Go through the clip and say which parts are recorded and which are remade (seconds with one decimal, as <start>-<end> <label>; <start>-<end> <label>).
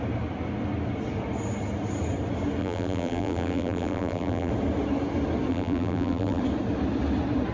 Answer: 0.0-2.6 recorded; 2.6-4.5 remade; 4.5-5.5 recorded; 5.5-6.4 remade; 6.4-7.5 recorded